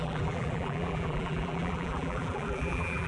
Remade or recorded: remade